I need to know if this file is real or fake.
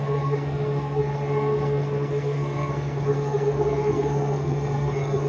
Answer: fake